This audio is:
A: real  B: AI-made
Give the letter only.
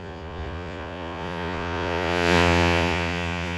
B